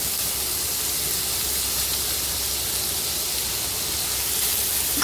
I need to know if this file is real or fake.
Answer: real